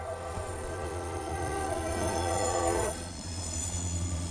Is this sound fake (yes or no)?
yes